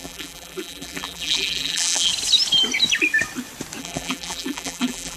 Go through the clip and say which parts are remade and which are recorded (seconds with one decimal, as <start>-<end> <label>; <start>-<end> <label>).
0.0-2.1 remade; 2.1-3.8 recorded; 3.8-5.2 remade